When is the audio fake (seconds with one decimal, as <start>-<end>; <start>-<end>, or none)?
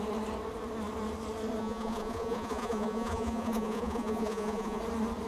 1.6-4.8